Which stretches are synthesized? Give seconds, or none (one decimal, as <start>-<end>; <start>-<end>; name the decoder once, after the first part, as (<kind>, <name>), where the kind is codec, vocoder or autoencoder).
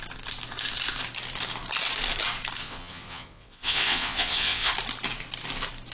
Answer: 2.6-4.7 (vocoder, WaveNeXt)